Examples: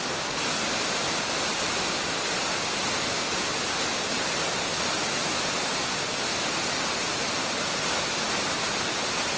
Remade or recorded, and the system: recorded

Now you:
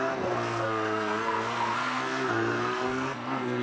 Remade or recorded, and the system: remade, codec, SNAC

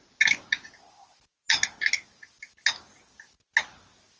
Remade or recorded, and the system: recorded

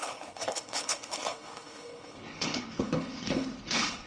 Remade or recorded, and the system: remade, codec, HILCodec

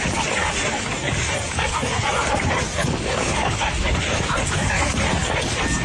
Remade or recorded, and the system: remade, codec, DAC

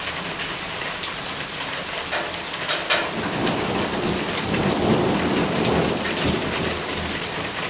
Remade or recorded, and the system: remade, vocoder, BigVGAN v2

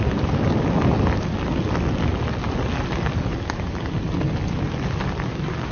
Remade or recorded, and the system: recorded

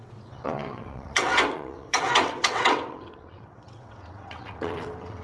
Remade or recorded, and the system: remade, vocoder, WaveNeXt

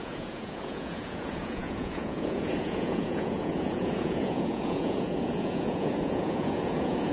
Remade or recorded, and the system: remade, vocoder, Vocos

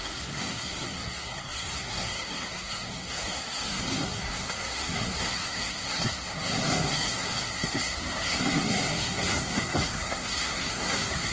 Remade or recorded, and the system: remade, codec, SNAC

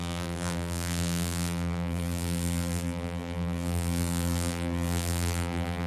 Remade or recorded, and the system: remade, vocoder, BigVGAN v2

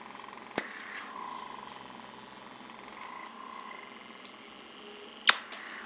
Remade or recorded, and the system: recorded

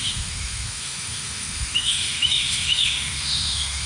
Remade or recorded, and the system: remade, autoencoder, DAC-VAE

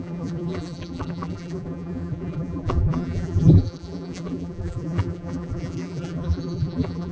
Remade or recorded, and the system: remade, vocoder, BigVGAN v2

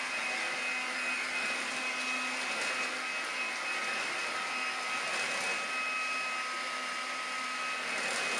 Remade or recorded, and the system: recorded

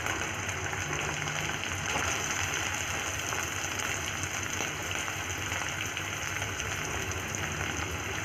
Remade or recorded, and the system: recorded